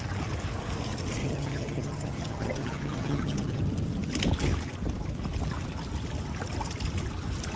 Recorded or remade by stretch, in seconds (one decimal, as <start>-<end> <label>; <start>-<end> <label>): 0.0-1.2 recorded; 1.2-3.6 remade; 3.6-7.6 recorded